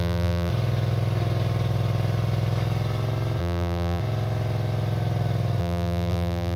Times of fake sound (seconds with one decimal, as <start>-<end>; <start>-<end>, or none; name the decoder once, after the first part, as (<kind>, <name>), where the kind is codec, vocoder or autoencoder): 0.0-0.5 (vocoder, BigVGAN v2); 3.4-4.0; 5.6-6.6